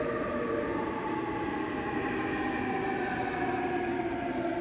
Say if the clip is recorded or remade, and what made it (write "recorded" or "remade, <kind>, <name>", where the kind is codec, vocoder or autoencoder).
recorded